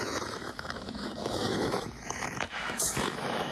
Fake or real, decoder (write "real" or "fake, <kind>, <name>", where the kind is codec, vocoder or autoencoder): fake, autoencoder, DAC-VAE